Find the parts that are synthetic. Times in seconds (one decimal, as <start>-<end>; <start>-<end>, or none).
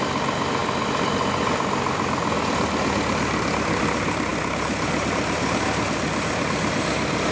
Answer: none